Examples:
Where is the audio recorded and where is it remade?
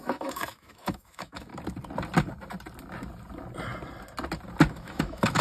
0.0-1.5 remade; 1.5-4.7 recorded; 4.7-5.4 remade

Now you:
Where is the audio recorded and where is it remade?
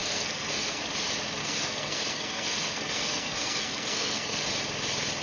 0.0-0.8 remade; 0.8-1.4 recorded; 1.4-4.5 remade; 4.5-5.2 recorded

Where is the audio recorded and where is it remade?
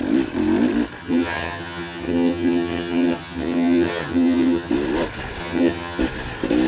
0.0-1.0 recorded; 1.0-4.7 remade; 4.7-5.4 recorded; 5.4-6.0 remade; 6.0-6.7 recorded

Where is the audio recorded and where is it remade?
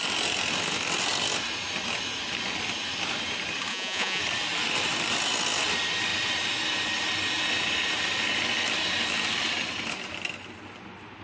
0.0-3.7 recorded; 3.7-4.2 remade; 4.2-11.2 recorded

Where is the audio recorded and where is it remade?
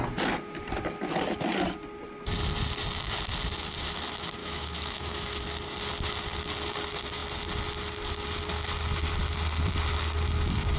0.0-4.4 recorded; 4.4-5.4 remade; 5.4-10.8 recorded